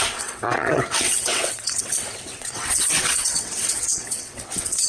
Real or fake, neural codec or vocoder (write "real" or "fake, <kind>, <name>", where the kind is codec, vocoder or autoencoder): fake, vocoder, WaveNeXt